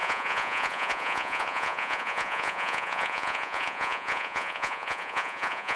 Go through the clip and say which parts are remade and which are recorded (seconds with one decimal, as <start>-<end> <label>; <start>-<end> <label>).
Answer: 0.0-5.8 remade